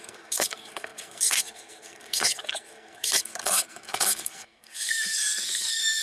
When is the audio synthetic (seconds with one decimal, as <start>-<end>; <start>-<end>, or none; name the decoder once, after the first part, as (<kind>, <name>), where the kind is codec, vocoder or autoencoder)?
0.0-6.0 (codec, SNAC)